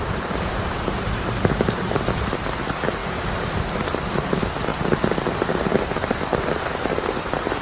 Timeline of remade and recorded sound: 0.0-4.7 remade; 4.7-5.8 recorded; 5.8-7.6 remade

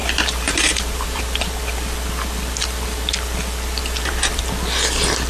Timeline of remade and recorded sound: 0.0-1.5 remade; 1.5-3.8 recorded; 3.8-4.4 remade; 4.4-5.3 recorded

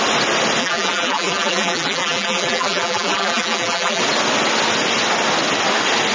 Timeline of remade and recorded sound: 0.0-0.6 recorded; 0.6-4.0 remade; 4.0-6.1 recorded

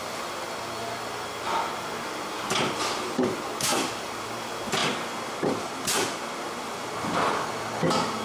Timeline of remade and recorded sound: 0.0-3.7 recorded; 3.7-4.3 remade; 4.3-8.2 recorded

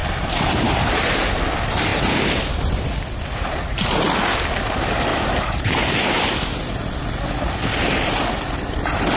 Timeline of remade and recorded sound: 0.0-1.3 remade; 1.3-1.9 recorded; 1.9-2.4 remade; 2.4-5.1 recorded; 5.1-6.6 remade; 6.6-9.2 recorded

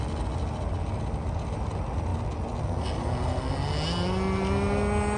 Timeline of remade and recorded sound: 0.0-5.2 recorded

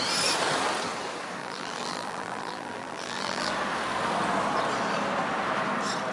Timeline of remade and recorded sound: 0.0-1.4 recorded; 1.4-3.5 remade; 3.5-6.1 recorded